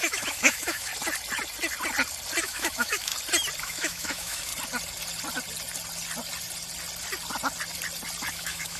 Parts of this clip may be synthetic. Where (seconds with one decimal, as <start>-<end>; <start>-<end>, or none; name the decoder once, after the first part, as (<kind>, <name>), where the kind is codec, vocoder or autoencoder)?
0.0-0.9 (autoencoder, DAC-VAE); 2.4-3.1; 3.6-4.5; 8.3-8.8

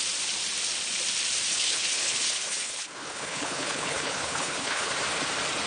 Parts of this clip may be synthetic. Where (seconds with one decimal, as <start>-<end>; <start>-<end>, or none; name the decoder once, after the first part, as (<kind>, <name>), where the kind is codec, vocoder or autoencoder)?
1.5-4.9 (codec, HILCodec)

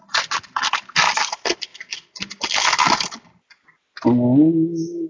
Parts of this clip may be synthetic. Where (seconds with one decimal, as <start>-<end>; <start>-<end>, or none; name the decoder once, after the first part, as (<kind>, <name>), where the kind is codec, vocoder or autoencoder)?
none